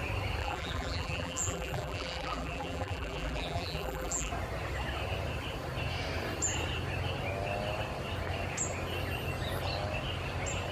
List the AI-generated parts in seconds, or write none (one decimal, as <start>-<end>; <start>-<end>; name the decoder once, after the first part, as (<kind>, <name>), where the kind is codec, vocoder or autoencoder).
0.4-4.3 (vocoder, BigVGAN v2)